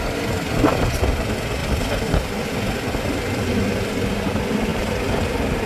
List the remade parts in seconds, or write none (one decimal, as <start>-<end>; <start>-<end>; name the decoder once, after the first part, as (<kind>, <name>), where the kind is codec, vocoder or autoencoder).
none